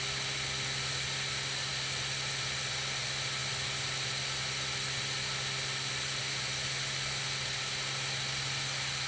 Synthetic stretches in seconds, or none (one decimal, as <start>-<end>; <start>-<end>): none